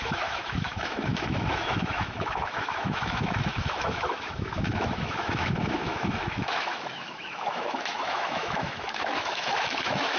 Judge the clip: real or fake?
fake